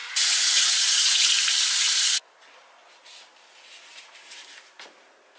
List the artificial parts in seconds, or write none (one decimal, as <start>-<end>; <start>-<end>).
0.0-1.3